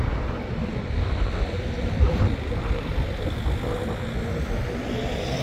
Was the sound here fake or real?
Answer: real